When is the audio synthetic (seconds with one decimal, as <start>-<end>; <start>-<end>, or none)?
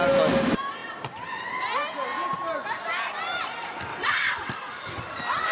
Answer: 3.9-4.5